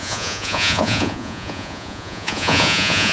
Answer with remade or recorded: remade